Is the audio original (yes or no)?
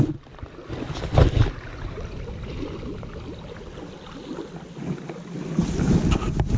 yes